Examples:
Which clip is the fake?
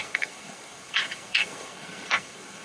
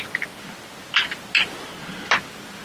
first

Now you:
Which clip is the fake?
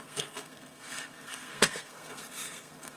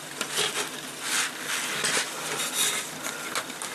first